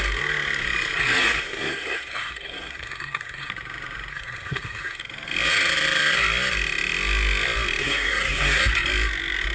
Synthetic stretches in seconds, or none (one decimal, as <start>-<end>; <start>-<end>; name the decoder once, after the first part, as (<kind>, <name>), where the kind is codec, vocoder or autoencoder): 1.2-3.5 (codec, SNAC); 4.1-5.0; 7.8-8.6